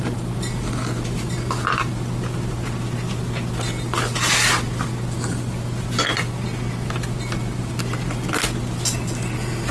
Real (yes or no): yes